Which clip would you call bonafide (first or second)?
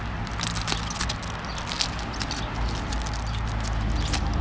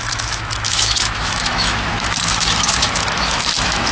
first